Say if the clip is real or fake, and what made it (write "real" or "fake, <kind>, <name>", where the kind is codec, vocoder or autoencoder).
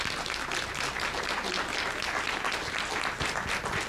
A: real